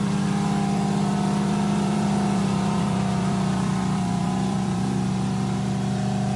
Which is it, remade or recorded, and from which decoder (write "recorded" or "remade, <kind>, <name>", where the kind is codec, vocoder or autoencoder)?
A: remade, vocoder, BigVGAN v2